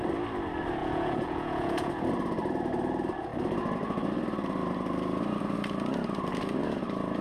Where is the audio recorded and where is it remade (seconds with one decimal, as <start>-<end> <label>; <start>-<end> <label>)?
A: 0.0-0.8 recorded; 0.8-1.9 remade; 1.9-7.2 recorded